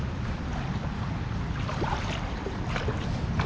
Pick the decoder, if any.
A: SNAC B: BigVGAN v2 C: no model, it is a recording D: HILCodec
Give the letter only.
C